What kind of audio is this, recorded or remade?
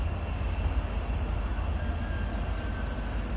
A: recorded